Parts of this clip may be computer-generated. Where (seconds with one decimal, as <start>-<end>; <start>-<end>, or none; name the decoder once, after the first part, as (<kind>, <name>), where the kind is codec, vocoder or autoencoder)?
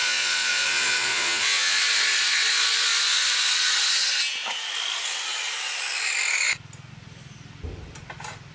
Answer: 0.0-1.8 (vocoder, Vocos)